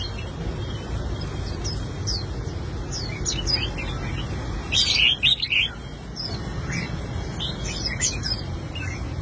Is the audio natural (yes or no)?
yes